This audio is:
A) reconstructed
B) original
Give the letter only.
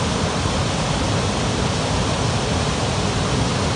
B